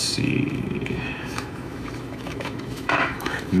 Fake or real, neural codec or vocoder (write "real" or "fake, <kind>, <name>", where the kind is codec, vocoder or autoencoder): fake, autoencoder, DAC-VAE